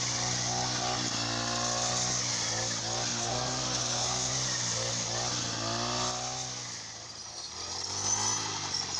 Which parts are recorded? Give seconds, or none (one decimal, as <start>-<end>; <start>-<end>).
0.0-3.1; 4.3-9.0